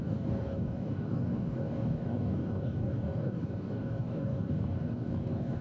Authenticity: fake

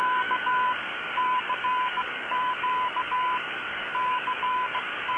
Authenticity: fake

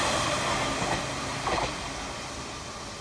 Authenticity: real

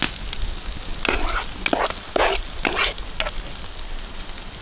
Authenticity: real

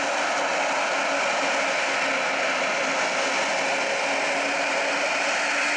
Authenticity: real